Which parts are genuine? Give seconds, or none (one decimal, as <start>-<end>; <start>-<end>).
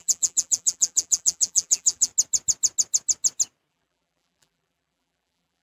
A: 2.1-3.7